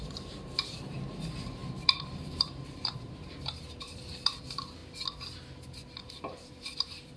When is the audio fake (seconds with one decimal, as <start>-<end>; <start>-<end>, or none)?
0.0-4.8; 6.0-7.2